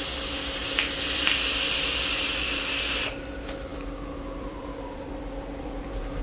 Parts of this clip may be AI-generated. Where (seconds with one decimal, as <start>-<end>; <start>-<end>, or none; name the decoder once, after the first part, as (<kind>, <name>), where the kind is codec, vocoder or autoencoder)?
3.7-5.8 (vocoder, BigVGAN v2)